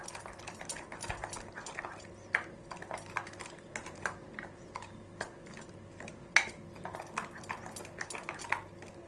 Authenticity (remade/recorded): recorded